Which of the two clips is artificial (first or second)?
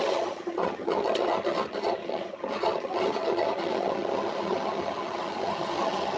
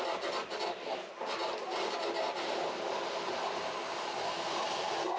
first